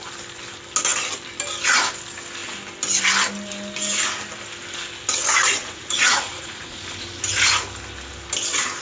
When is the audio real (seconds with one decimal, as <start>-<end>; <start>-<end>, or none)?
0.0-5.6; 6.8-8.8